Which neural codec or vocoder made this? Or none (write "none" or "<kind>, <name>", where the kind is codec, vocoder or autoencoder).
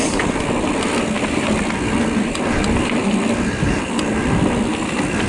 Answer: none